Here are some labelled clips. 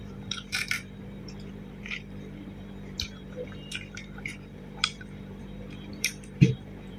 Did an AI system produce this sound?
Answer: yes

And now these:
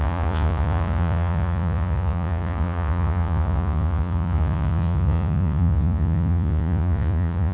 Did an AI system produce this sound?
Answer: yes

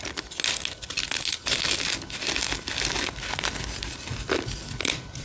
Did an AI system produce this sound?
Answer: no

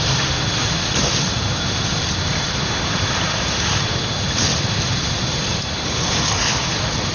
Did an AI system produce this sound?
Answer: yes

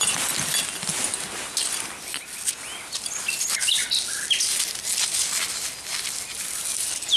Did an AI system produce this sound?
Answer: no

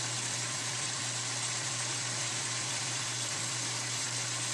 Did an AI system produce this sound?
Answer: yes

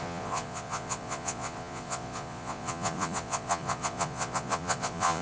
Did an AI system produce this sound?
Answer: yes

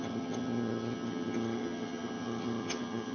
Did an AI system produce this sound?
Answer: yes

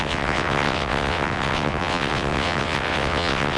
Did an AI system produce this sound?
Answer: yes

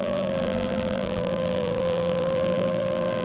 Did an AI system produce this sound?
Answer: yes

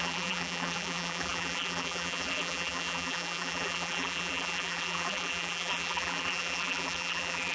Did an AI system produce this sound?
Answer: yes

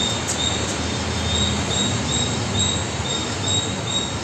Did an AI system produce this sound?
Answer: no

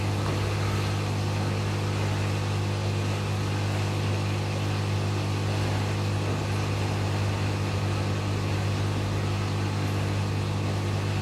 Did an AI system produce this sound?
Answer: no